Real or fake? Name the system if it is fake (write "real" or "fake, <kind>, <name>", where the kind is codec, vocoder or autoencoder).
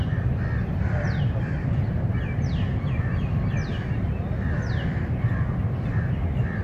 real